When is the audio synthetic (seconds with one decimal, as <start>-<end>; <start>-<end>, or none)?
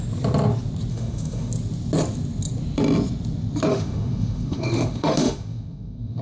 0.9-1.5; 3.7-6.2